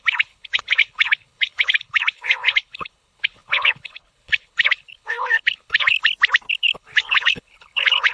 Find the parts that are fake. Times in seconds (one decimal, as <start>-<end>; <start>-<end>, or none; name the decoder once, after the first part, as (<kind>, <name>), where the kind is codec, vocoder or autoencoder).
0.0-6.0 (codec, HILCodec); 6.5-8.1